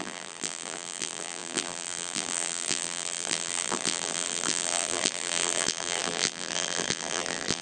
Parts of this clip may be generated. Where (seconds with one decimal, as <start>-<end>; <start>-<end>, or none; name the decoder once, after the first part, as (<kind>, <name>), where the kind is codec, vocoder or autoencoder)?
0.0-7.6 (vocoder, BigVGAN v2)